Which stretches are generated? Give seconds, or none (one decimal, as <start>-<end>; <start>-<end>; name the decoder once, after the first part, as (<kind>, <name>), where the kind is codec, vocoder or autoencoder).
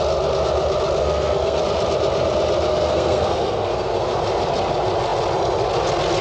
1.0-1.6 (codec, SNAC); 2.7-4.1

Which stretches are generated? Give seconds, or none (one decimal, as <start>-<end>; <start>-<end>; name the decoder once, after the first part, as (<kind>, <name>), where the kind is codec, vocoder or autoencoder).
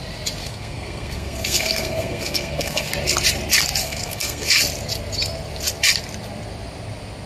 0.4-2.9 (codec, SNAC); 3.8-4.6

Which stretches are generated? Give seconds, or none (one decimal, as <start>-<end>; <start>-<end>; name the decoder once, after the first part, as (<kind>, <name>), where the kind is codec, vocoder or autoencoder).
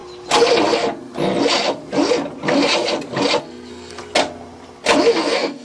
3.4-4.0 (codec, SNAC); 5.1-5.6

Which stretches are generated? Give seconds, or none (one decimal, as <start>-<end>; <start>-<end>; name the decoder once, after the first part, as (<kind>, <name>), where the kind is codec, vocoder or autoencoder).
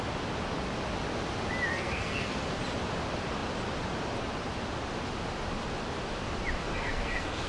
1.7-2.4 (codec, SNAC); 6.6-7.5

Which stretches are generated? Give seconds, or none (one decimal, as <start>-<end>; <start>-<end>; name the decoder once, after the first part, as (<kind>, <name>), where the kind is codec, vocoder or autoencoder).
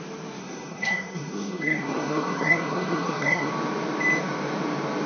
0.4-3.5 (codec, SNAC)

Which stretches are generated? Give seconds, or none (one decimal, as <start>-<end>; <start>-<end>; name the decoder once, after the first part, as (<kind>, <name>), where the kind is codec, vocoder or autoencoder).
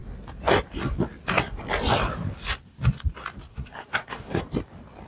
3.5-4.4 (codec, SNAC)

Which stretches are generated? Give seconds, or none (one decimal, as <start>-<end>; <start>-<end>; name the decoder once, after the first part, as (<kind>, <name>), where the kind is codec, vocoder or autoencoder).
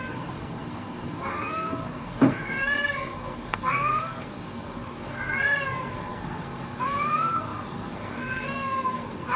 0.0-9.4 (codec, SNAC)